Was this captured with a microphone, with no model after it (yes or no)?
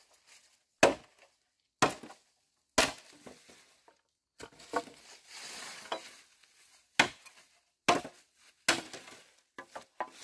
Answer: yes